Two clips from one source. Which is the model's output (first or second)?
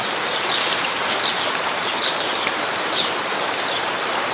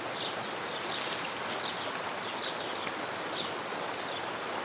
first